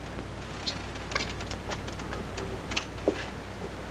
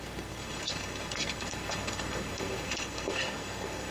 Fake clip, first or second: second